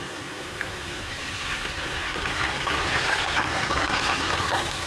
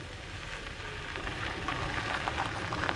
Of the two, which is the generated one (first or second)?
first